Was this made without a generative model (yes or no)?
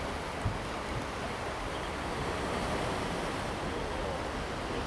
yes